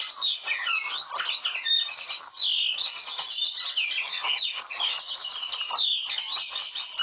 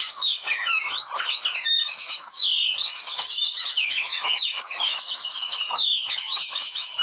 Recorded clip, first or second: first